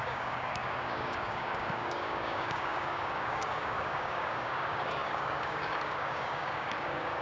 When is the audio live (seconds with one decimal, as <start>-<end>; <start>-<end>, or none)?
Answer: none